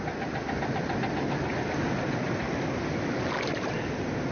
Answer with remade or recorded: recorded